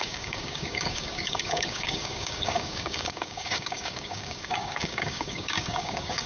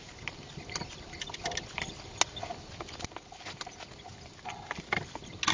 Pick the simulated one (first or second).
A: first